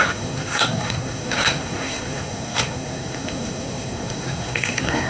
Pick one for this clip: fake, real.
fake